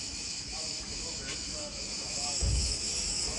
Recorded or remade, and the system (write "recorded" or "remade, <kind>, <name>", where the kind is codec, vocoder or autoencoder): remade, autoencoder, DAC-VAE